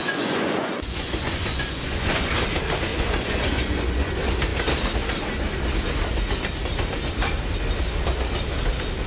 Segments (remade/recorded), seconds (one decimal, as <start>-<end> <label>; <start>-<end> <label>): 0.0-2.3 remade; 2.3-2.9 recorded; 2.9-4.1 remade; 4.1-9.1 recorded